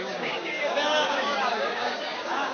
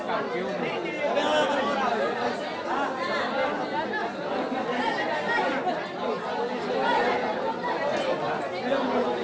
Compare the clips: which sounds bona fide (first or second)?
second